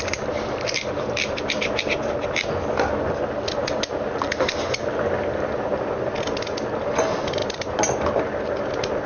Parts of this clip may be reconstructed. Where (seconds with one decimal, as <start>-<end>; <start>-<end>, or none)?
none